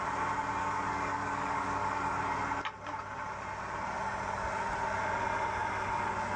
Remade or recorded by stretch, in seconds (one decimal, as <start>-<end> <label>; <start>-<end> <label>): 0.0-0.6 recorded; 0.6-2.2 remade; 2.2-6.4 recorded